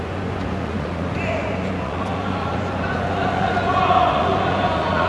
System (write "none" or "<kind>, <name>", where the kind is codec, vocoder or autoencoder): vocoder, Vocos